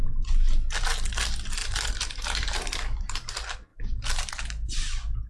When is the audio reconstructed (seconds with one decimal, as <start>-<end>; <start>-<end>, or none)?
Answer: 1.6-3.3; 3.7-4.3